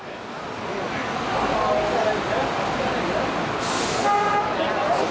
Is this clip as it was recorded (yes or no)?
yes